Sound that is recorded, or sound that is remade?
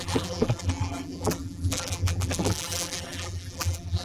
remade